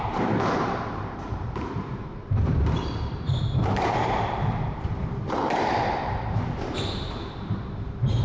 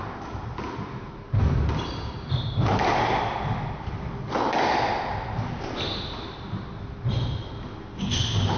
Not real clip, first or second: first